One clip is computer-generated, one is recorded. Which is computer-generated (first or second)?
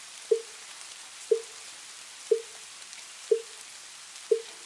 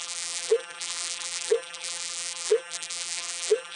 second